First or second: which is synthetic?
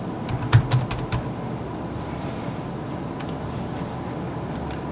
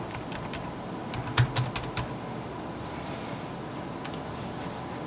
first